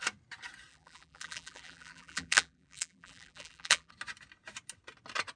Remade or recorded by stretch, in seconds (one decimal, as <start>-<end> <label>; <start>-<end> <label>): 0.0-0.7 recorded; 0.7-3.9 remade; 3.9-5.4 recorded